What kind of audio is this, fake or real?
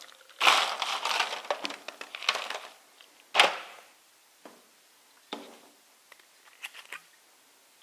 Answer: real